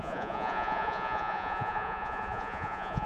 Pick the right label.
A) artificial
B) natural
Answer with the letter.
A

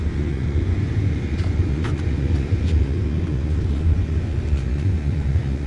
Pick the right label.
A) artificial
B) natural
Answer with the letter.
A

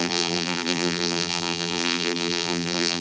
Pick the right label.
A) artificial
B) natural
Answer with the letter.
A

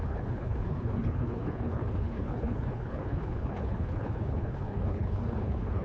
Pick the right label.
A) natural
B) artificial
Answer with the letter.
B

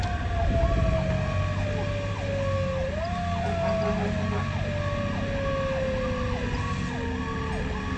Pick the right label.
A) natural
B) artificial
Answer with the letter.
A